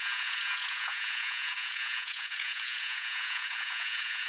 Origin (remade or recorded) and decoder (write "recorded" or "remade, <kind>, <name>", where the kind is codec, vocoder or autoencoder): remade, vocoder, Vocos